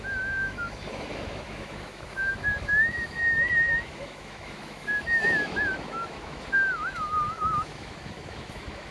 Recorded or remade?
remade